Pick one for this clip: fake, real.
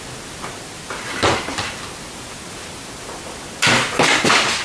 real